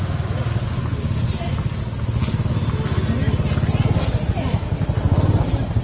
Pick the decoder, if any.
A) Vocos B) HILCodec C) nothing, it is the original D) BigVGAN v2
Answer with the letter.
C